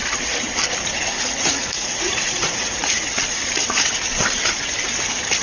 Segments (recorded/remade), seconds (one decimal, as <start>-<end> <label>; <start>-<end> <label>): 0.0-1.6 recorded; 1.6-3.0 remade; 3.0-5.4 recorded